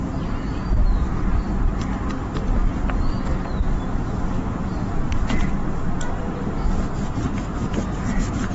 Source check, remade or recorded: recorded